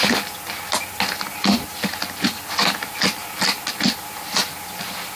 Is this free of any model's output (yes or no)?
yes